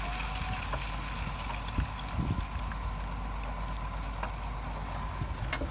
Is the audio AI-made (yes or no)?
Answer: no